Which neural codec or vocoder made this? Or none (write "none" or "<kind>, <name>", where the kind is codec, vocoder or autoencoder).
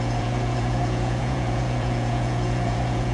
vocoder, Vocos